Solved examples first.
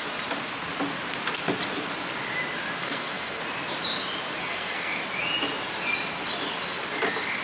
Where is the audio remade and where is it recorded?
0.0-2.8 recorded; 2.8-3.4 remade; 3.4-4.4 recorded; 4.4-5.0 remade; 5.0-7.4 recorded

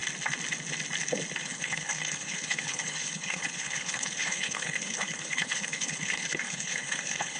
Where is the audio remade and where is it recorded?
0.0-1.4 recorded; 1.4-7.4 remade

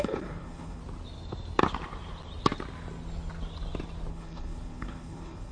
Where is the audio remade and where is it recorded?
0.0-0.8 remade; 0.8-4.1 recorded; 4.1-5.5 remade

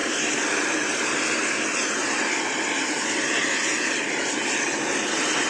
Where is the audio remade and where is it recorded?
0.0-5.5 recorded

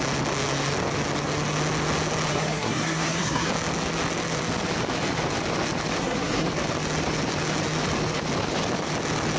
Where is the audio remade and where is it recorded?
0.0-2.3 recorded; 2.3-3.5 remade; 3.5-6.0 recorded; 6.0-6.5 remade; 6.5-9.4 recorded